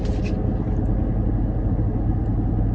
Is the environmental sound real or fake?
real